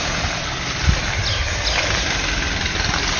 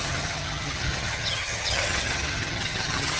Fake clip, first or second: second